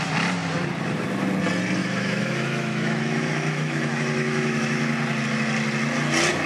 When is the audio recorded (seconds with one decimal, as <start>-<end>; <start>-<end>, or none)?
0.0-1.8; 4.9-6.5